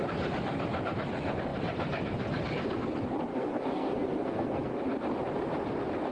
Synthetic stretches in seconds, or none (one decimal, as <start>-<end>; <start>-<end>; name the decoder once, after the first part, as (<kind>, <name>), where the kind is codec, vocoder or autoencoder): 3.3-4.8 (codec, SNAC)